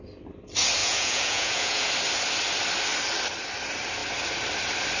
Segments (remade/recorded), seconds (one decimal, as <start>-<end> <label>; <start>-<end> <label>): 0.0-0.8 recorded; 0.8-1.9 remade; 1.9-5.0 recorded